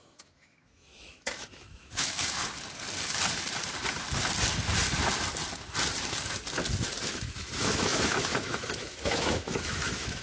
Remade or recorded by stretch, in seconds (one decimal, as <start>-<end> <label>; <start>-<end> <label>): 0.0-2.4 remade; 2.4-7.0 recorded; 7.0-10.2 remade